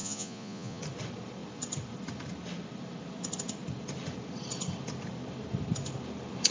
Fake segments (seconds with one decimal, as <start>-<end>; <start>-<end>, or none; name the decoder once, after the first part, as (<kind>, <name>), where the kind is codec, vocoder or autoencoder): 0.0-0.8 (vocoder, Vocos)